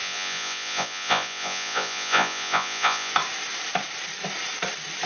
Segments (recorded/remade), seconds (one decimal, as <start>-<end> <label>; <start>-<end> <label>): 0.0-3.1 remade; 3.1-5.1 recorded